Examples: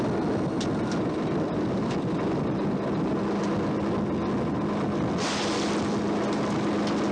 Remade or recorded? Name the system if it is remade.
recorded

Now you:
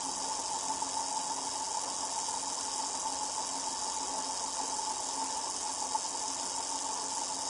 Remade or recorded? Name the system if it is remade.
recorded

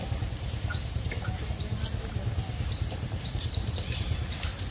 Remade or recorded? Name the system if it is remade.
recorded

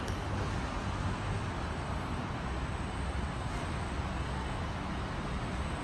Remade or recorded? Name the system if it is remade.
recorded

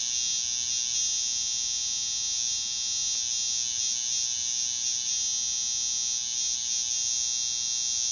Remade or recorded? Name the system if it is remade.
recorded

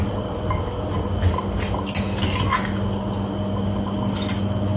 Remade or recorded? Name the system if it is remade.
recorded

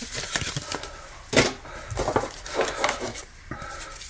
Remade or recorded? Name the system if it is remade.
recorded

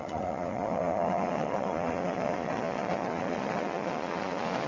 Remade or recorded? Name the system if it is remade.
remade, vocoder, Vocos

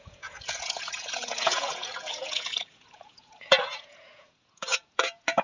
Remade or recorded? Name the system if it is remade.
remade, vocoder, Vocos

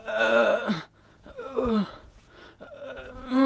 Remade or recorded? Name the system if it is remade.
remade, vocoder, Vocos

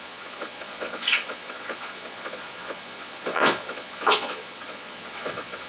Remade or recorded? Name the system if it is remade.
remade, vocoder, Vocos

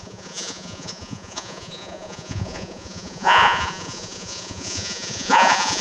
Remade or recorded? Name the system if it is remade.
remade, vocoder, Vocos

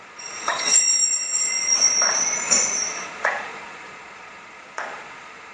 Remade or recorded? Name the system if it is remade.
remade, vocoder, Vocos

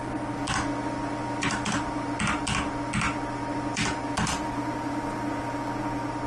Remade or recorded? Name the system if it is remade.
recorded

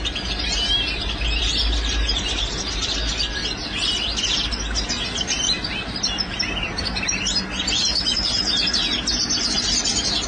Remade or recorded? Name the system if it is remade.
recorded